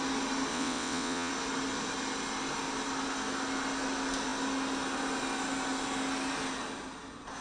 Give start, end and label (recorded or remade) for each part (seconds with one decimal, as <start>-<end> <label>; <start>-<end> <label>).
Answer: 0.0-0.5 recorded; 0.5-1.3 remade; 1.3-7.4 recorded